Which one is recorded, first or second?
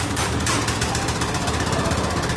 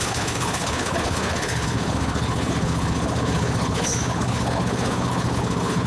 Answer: first